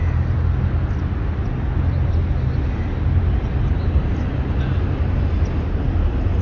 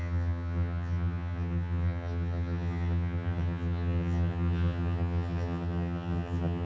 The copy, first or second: second